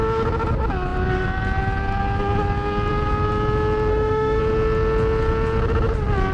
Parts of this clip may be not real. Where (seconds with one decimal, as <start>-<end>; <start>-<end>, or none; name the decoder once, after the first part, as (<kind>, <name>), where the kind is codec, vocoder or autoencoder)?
3.9-4.4 (autoencoder, DAC-VAE)